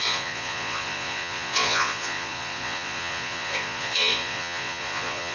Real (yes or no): no